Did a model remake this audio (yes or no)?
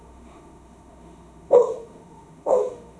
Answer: yes